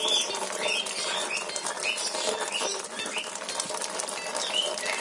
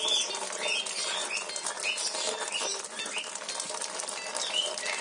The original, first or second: second